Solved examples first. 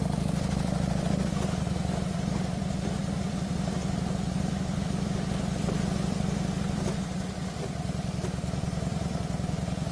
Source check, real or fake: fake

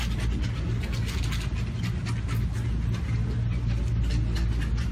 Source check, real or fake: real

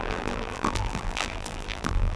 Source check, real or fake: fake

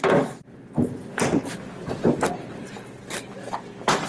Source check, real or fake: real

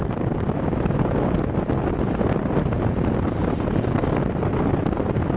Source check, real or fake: real